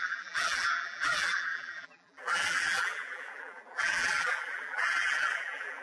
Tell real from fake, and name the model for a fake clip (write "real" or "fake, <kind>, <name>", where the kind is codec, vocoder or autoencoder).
fake, vocoder, BigVGAN v2